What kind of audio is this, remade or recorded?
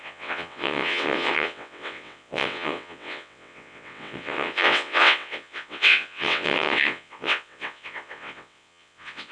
remade